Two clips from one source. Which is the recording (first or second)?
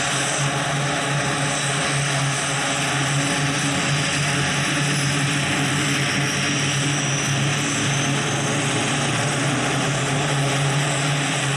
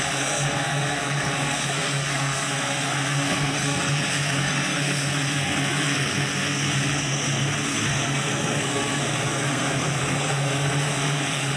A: first